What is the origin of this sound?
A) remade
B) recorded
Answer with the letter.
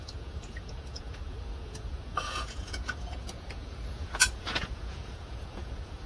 A